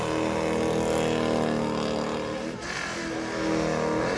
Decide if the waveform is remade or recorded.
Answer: recorded